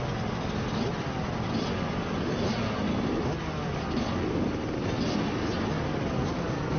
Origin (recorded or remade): recorded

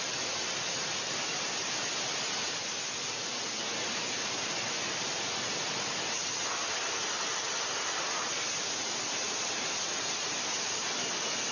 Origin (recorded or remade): recorded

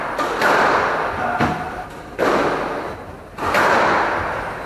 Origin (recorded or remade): recorded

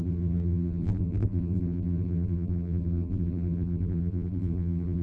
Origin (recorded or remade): remade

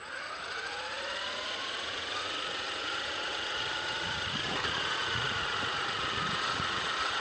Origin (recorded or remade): remade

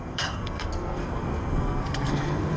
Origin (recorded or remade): remade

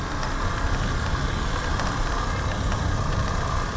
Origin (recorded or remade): recorded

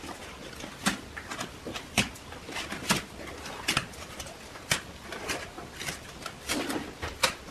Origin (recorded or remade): recorded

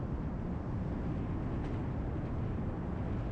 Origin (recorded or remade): recorded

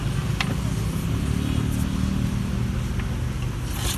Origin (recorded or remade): recorded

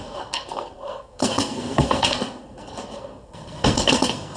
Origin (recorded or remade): remade